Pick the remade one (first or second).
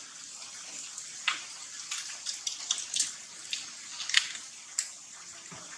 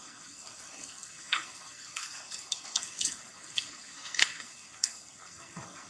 second